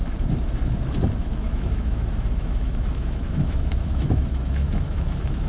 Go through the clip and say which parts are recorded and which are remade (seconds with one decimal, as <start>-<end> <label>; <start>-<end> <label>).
0.0-1.2 recorded; 1.2-5.5 remade